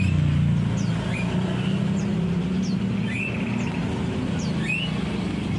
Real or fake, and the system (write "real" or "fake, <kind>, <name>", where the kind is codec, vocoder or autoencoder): real